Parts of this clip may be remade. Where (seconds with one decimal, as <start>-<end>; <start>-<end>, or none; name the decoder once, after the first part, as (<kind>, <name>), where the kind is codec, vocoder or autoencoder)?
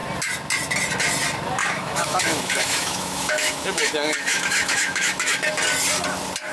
1.6-5.5 (autoencoder, DAC-VAE)